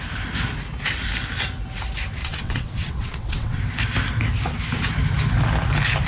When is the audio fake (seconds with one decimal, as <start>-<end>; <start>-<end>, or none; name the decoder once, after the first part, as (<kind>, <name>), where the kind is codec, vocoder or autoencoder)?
2.2-3.6 (vocoder, WaveNeXt)